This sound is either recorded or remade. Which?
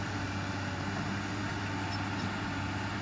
recorded